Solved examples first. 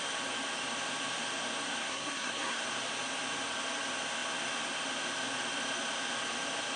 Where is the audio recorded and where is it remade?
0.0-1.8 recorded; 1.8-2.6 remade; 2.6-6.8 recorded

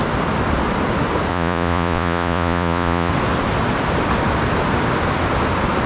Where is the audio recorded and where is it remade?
0.0-1.3 recorded; 1.3-3.1 remade; 3.1-5.9 recorded

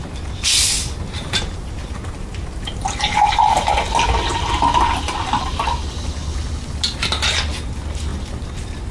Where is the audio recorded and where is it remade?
0.0-0.8 recorded; 0.8-3.7 remade; 3.7-8.9 recorded